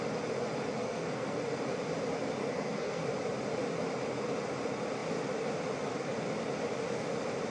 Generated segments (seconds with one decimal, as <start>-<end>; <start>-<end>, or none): 0.8-1.4; 2.4-3.0